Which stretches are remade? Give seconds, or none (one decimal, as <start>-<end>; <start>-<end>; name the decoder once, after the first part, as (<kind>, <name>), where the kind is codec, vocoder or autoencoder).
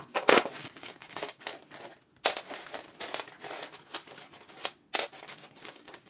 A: 0.0-1.5 (codec, DAC); 5.2-6.1